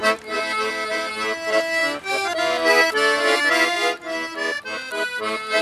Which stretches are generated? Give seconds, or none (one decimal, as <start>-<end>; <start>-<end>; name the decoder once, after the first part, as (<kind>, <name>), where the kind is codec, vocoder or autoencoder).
none